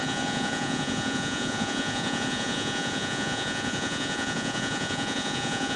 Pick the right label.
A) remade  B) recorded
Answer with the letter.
A